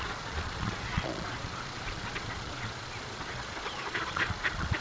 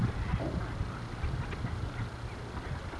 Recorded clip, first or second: second